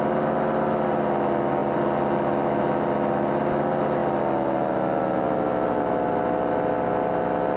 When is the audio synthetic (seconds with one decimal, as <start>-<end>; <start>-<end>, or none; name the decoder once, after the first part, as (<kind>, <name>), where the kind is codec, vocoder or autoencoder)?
none